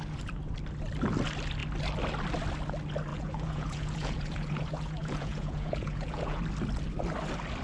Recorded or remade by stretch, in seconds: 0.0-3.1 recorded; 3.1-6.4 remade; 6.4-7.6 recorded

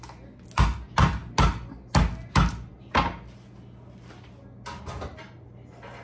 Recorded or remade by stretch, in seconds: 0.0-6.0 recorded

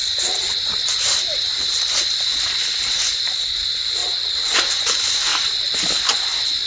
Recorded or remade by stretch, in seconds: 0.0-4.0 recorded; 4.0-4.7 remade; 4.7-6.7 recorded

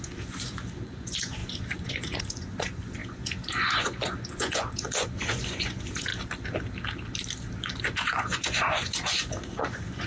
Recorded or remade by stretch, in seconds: 0.0-6.1 remade; 6.1-7.8 recorded; 7.8-10.1 remade

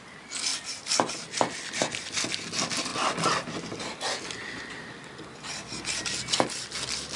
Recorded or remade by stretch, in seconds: 0.0-7.2 recorded

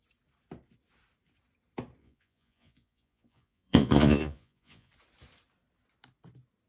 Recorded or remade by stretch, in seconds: 0.0-2.0 recorded; 2.0-4.9 remade; 4.9-6.7 recorded